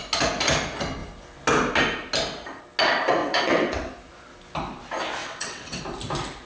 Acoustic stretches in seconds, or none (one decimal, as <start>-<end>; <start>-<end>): 0.0-3.2; 3.9-5.2; 5.8-6.5